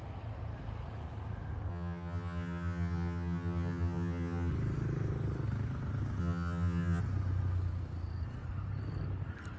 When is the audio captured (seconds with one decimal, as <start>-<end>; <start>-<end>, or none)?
0.0-1.7; 4.5-6.2; 7.0-9.6